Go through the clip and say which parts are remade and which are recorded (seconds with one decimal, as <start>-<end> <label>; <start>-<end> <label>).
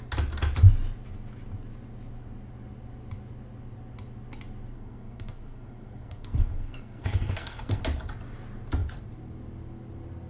0.0-4.7 recorded; 4.7-7.8 remade; 7.8-10.3 recorded